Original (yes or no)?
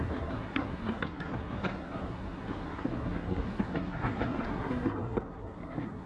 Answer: no